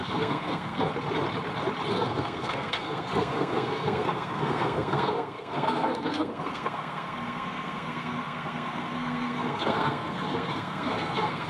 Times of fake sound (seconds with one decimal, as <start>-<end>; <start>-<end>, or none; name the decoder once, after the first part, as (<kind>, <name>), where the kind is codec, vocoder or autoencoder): 0.0-0.9 (codec, SNAC); 1.9-11.5